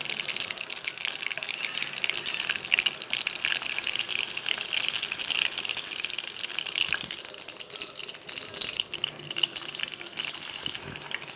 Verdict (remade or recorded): recorded